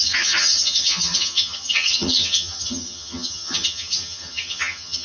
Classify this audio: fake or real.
fake